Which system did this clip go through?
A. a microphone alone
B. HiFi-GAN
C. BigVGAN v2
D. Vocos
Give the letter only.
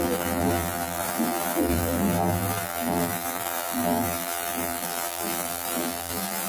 C